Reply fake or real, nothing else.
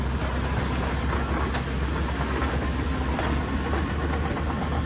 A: real